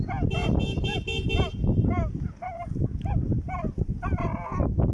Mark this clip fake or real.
real